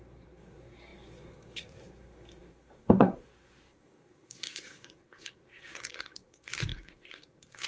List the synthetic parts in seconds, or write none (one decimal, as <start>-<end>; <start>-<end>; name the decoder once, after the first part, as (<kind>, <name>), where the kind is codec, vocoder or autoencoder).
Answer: 0.0-7.7 (codec, SNAC)